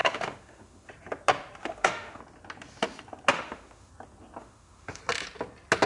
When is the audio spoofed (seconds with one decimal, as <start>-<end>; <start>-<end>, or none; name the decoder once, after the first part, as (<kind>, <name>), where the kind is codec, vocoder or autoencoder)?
0.0-0.9 (autoencoder, DAC-VAE); 1.6-2.2; 3.3-3.9; 4.4-5.0